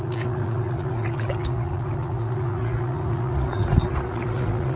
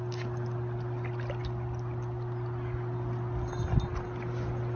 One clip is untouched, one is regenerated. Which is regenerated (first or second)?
first